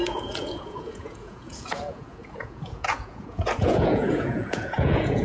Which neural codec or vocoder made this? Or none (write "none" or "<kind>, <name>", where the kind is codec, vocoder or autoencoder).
vocoder, Vocos